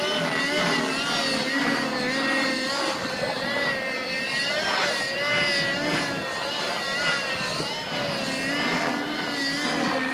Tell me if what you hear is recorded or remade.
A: recorded